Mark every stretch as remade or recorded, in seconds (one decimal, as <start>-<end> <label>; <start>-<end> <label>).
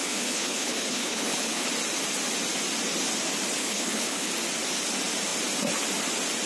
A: 0.0-1.7 remade; 1.7-3.6 recorded; 3.6-4.3 remade; 4.3-6.5 recorded